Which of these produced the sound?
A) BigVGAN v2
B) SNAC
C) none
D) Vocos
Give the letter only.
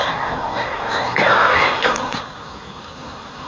B